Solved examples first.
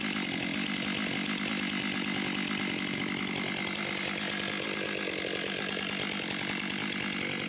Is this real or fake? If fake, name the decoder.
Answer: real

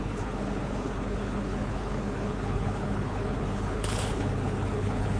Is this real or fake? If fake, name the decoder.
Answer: fake, codec, HILCodec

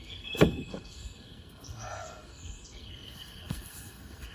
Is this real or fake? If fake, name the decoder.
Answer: fake, codec, SNAC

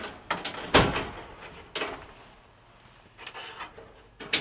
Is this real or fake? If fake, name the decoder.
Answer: real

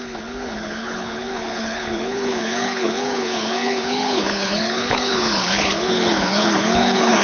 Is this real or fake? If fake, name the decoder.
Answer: fake, codec, HILCodec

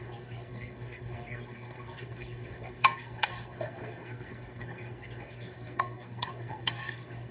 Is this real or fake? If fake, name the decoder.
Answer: fake, codec, SNAC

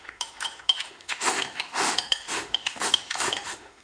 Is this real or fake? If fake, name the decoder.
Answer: fake, autoencoder, DAC-VAE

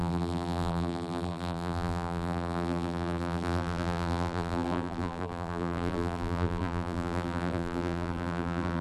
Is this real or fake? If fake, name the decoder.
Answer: fake, vocoder, BigVGAN v2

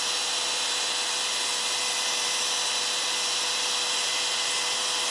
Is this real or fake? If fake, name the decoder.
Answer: real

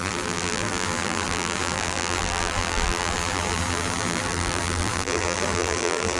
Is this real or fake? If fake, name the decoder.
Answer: fake, vocoder, BigVGAN v2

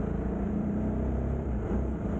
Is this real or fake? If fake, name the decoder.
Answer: fake, vocoder, BigVGAN v2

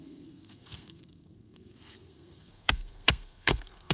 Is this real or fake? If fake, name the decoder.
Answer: fake, codec, SNAC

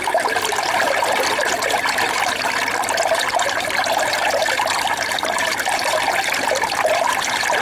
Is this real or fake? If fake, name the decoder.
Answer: real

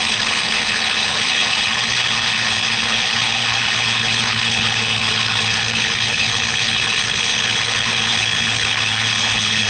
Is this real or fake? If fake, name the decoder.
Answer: fake, codec, HILCodec